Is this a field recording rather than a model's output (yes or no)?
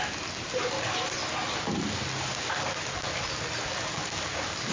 yes